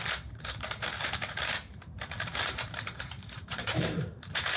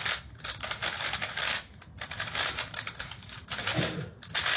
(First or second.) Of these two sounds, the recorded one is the second